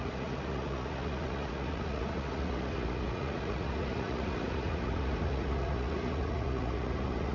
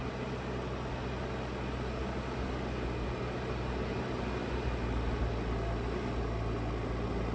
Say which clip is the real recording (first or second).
second